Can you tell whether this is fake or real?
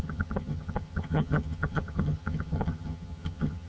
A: fake